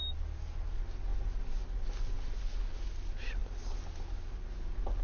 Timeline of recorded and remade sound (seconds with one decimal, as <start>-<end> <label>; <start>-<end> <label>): 0.0-5.0 recorded